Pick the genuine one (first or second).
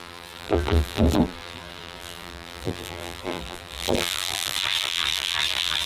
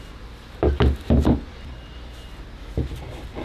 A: second